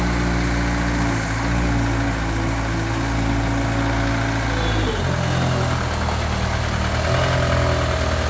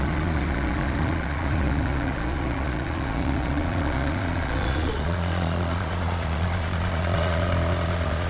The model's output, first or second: second